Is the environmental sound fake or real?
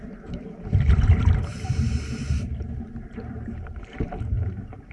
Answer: fake